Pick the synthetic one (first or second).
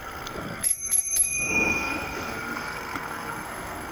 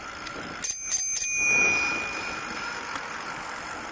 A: first